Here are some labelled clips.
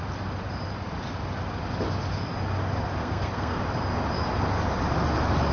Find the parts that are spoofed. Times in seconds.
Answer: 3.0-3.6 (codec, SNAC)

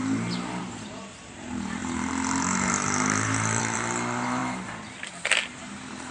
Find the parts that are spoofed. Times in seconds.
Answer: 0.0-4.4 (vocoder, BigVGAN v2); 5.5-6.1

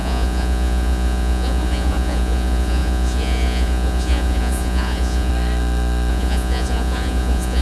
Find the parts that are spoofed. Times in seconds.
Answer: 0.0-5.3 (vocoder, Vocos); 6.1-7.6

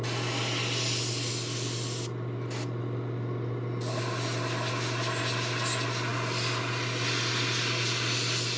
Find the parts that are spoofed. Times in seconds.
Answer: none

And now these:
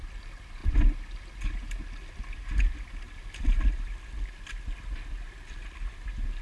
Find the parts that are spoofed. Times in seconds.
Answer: none

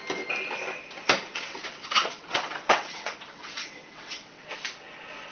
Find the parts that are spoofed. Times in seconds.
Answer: 1.3-4.5 (vocoder, WaveNeXt)

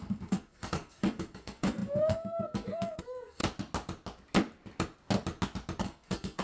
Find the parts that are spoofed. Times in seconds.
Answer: 0.0-3.4 (codec, SNAC); 5.8-6.4